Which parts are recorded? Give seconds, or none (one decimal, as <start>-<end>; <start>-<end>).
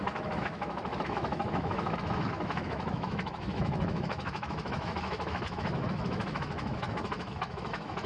none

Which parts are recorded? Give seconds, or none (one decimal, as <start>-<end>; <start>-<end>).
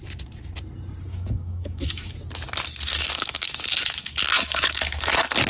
0.0-1.1; 2.1-2.9; 5.1-5.5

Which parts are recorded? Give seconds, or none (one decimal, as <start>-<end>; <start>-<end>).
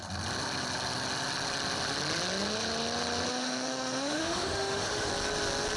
0.0-3.3; 5.1-5.8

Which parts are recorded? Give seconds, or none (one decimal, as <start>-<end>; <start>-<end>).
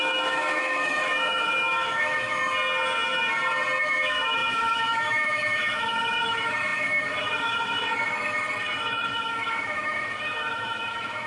2.4-3.8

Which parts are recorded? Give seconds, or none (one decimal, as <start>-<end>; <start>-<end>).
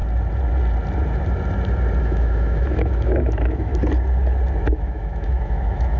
0.0-2.0; 3.7-4.7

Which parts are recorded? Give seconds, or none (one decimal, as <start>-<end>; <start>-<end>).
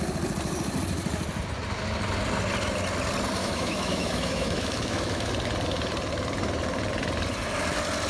0.0-3.4; 5.3-8.1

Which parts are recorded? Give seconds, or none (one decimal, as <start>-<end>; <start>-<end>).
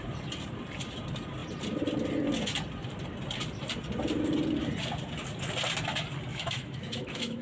0.0-6.3